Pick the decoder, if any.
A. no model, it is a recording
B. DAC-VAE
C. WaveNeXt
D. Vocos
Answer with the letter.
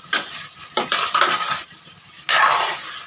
A